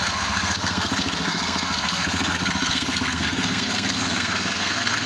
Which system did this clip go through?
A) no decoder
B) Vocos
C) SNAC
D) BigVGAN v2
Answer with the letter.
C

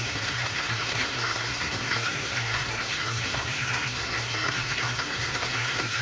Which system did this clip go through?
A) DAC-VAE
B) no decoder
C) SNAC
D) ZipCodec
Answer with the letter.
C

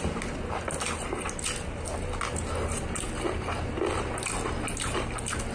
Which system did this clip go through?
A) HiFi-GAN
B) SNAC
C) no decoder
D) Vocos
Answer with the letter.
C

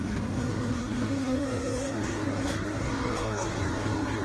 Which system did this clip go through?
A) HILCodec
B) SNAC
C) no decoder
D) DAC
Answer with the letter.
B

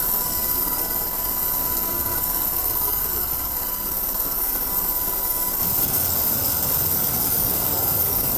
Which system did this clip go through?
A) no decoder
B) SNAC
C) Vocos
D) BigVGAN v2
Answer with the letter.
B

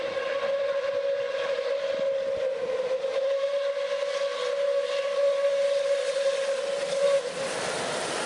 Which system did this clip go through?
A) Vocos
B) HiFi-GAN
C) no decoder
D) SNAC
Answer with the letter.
C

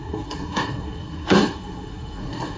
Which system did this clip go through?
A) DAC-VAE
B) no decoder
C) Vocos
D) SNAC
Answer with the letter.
D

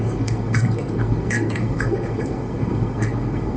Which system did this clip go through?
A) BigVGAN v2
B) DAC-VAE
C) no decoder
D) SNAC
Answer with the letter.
D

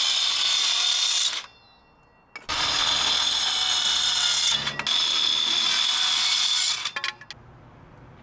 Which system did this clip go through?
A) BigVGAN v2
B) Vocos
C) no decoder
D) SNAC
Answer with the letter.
C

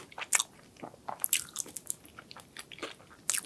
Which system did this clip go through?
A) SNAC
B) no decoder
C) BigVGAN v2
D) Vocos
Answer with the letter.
B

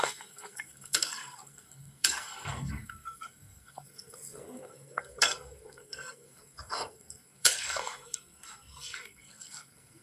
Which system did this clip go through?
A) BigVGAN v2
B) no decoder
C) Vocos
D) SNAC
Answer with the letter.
D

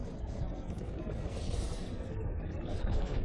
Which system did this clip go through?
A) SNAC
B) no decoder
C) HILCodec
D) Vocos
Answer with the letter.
A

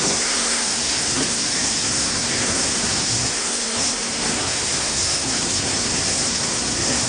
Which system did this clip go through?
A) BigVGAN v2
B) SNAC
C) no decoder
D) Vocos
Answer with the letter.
B